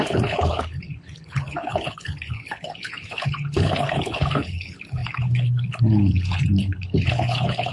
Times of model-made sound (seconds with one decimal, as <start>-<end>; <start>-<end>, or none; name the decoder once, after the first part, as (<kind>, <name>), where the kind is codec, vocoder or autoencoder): 0.0-7.7 (codec, HILCodec)